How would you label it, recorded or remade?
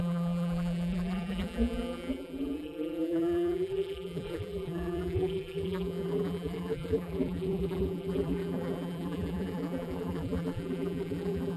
remade